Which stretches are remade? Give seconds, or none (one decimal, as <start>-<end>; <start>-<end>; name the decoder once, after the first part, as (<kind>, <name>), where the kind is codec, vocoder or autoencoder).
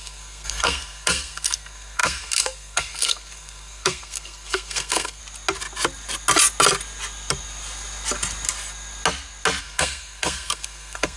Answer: 0.0-5.2 (codec, SNAC); 9.6-11.2